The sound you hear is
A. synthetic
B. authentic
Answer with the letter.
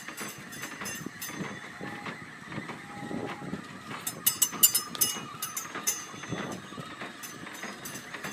B